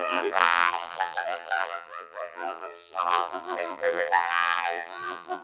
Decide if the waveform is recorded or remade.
remade